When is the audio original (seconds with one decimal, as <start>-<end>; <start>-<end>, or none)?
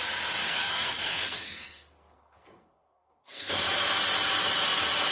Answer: 0.0-0.4; 3.5-5.1